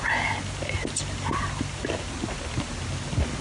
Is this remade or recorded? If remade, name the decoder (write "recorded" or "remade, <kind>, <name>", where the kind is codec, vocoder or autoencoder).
recorded